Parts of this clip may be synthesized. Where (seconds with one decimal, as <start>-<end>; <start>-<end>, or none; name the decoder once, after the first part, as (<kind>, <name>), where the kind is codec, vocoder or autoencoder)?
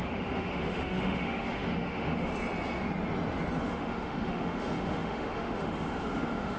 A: 0.0-2.3 (autoencoder, DAC-VAE); 3.6-6.6